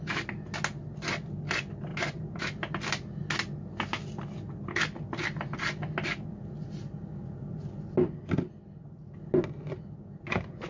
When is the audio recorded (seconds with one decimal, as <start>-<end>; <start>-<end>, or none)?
0.0-10.7